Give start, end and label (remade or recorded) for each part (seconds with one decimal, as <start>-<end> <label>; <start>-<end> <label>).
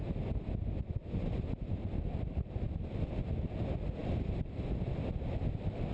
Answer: 0.0-5.9 recorded